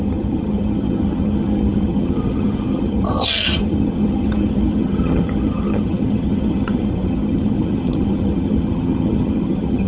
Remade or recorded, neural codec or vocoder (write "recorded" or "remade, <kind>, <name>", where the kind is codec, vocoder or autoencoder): remade, vocoder, HiFi-GAN